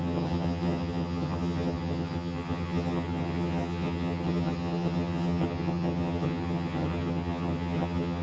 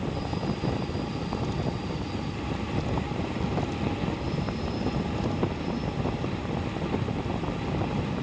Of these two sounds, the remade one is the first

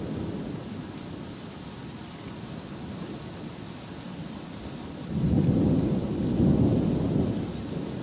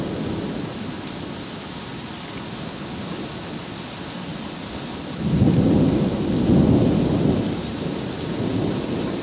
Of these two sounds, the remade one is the first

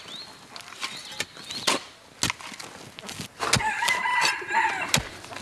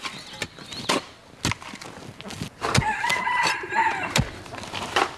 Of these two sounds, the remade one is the second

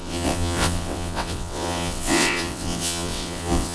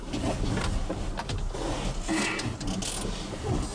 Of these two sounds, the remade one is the first